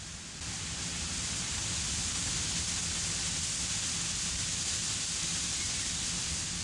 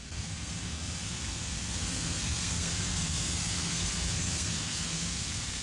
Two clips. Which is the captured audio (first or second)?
first